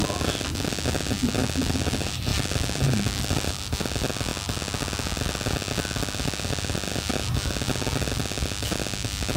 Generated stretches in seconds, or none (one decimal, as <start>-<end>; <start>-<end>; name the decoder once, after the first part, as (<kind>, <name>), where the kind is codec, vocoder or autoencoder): 2.3-3.5 (vocoder, BigVGAN v2)